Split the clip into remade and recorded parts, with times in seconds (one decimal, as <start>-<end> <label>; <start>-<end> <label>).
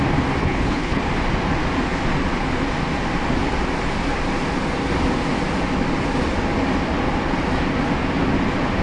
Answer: 0.0-0.4 recorded; 0.4-1.0 remade; 1.0-8.8 recorded